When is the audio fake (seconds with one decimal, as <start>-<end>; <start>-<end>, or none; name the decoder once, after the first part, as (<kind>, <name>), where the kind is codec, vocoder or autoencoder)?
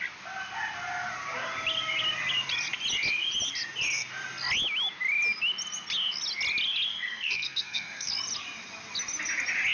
6.9-8.1 (codec, SNAC)